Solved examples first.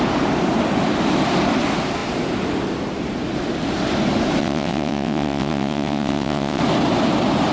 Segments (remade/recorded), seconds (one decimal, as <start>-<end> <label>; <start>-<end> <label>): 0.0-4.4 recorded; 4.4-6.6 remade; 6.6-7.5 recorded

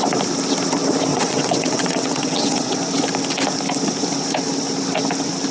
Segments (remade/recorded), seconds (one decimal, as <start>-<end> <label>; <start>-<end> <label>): 0.0-1.1 recorded; 1.1-2.8 remade; 2.8-5.5 recorded

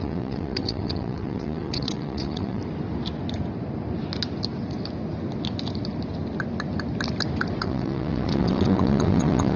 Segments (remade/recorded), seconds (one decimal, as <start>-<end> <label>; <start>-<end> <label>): 0.0-2.6 remade; 2.6-7.6 recorded; 7.6-9.6 remade

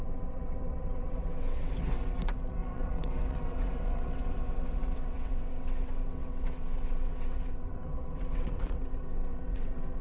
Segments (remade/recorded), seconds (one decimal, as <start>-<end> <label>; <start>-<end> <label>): 0.0-10.0 remade

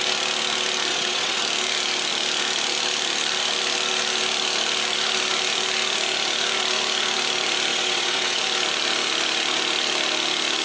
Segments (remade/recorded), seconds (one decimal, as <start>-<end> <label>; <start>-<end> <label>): 0.0-0.9 recorded; 0.9-1.4 remade; 1.4-7.7 recorded; 7.7-8.4 remade; 8.4-10.6 recorded

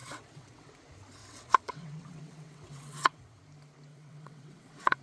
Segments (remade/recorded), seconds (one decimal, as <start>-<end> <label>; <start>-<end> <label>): 0.0-0.7 remade; 0.7-1.2 recorded; 1.2-3.4 remade; 3.4-3.9 recorded; 3.9-5.0 remade

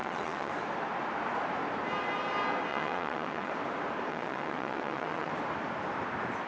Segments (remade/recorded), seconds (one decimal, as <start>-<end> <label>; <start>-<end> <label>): 0.0-0.5 remade; 0.5-2.7 recorded; 2.7-3.5 remade; 3.5-4.1 recorded; 4.1-5.3 remade; 5.3-6.5 recorded